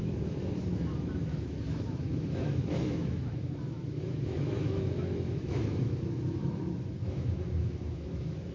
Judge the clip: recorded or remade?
remade